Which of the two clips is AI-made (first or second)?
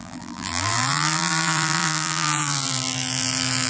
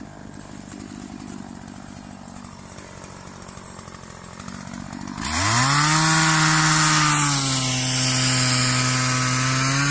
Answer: first